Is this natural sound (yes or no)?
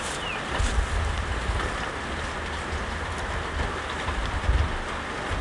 yes